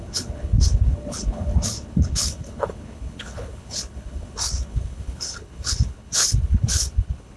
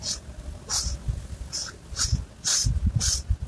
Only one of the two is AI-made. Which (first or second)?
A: first